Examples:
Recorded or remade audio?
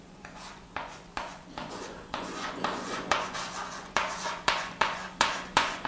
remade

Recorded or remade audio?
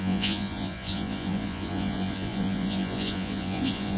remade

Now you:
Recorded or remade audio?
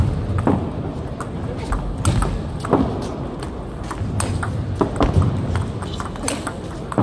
recorded